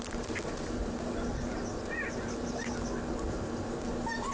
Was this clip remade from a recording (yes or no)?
no